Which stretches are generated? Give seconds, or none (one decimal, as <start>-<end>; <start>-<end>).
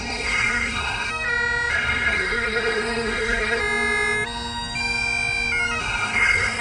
0.0-1.1; 1.7-3.6; 5.8-6.6